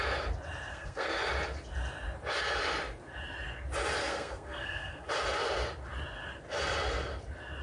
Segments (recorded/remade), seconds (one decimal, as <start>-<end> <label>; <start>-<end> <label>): 0.0-0.7 recorded; 0.7-1.3 remade; 1.3-4.0 recorded; 4.0-5.1 remade; 5.1-7.6 recorded

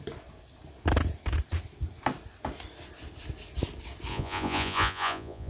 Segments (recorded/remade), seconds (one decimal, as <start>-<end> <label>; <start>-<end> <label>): 0.0-4.1 recorded; 4.1-5.5 remade